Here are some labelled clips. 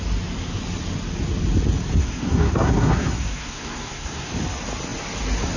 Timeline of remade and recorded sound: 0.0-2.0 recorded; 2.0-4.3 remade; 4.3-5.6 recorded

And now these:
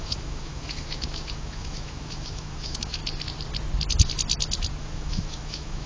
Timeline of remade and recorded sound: 0.0-3.0 remade; 3.0-4.8 recorded; 4.8-5.9 remade

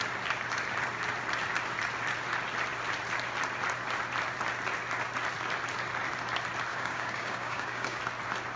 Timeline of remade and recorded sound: 0.0-6.7 recorded; 6.7-8.0 remade; 8.0-8.6 recorded